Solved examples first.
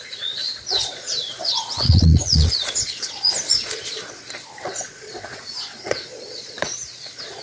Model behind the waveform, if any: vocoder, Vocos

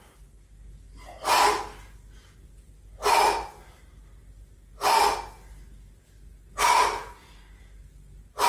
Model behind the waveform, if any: none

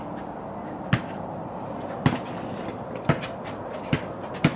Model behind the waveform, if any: none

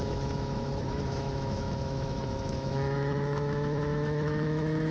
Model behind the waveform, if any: autoencoder, DAC-VAE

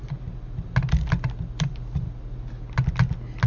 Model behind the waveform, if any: none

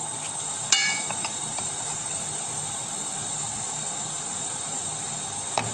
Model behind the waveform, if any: none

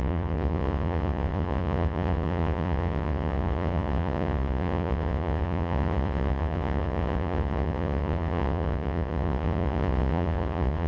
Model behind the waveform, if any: vocoder, Vocos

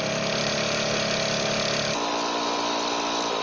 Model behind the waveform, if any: none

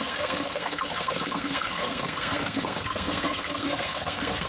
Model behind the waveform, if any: codec, SNAC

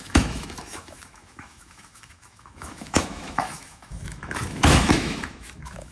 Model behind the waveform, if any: autoencoder, DAC-VAE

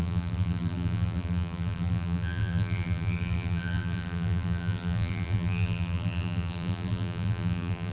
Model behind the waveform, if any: vocoder, BigVGAN v2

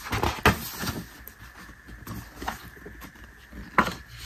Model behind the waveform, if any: none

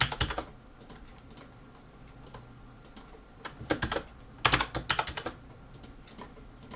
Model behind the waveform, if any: none